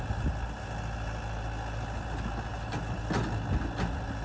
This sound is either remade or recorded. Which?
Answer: recorded